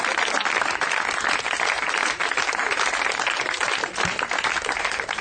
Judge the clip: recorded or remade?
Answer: remade